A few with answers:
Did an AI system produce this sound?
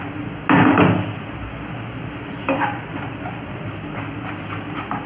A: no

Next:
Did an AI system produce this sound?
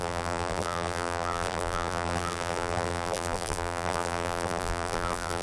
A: yes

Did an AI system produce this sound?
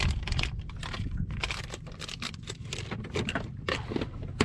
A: yes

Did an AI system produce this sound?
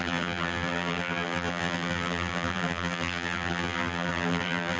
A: yes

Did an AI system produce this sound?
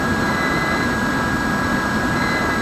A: no